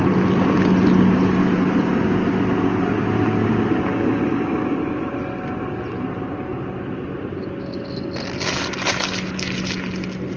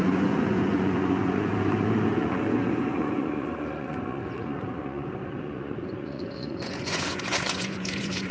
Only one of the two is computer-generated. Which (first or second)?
second